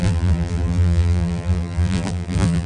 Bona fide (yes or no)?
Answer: no